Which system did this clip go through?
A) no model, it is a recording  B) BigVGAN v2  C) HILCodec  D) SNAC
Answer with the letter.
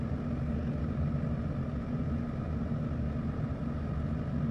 A